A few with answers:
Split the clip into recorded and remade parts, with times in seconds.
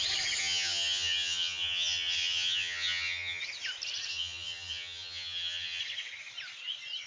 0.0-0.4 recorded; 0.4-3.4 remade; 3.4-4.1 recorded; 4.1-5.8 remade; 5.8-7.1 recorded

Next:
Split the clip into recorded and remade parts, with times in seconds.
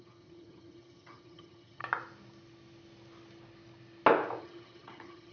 0.0-1.8 remade; 1.8-4.4 recorded; 4.4-5.3 remade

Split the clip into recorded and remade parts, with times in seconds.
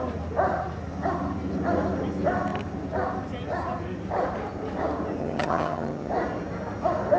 0.0-5.2 recorded; 5.2-6.1 remade; 6.1-7.2 recorded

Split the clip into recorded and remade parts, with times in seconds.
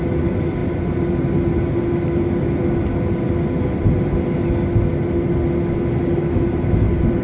0.0-7.2 recorded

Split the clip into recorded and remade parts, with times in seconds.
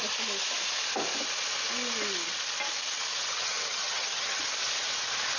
0.0-3.3 recorded; 3.3-4.4 remade; 4.4-5.4 recorded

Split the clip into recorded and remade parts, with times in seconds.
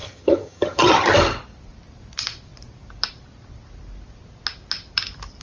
0.0-1.1 remade; 1.1-5.4 recorded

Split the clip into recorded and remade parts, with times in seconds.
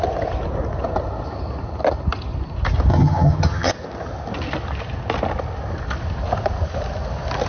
0.0-2.9 recorded; 2.9-3.7 remade; 3.7-7.5 recorded